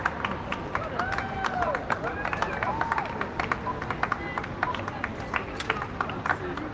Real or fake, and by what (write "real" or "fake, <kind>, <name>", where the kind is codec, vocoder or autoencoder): real